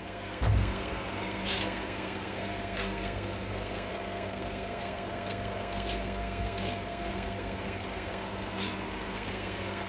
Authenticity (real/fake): fake